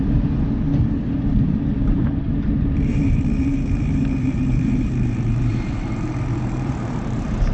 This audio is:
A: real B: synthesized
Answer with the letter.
B